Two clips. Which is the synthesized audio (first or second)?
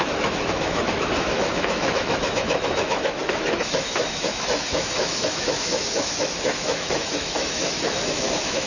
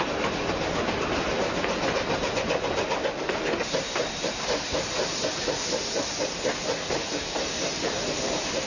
first